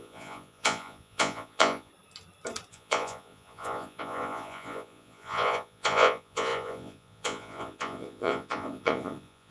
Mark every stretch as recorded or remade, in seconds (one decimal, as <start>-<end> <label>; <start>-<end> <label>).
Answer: 0.0-1.9 remade; 1.9-2.7 recorded; 2.7-9.5 remade